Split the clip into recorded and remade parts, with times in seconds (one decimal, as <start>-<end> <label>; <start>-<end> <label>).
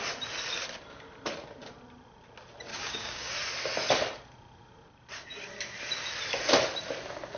0.0-2.7 recorded; 2.7-3.3 remade; 3.3-7.4 recorded